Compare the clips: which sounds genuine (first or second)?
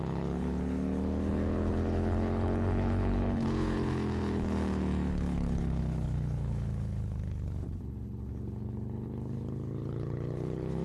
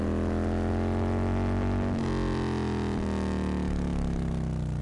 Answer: second